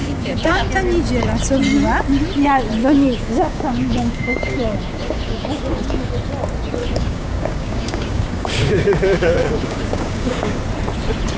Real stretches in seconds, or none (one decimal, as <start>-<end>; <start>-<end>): 0.7-2.8; 6.1-6.8; 10.6-11.4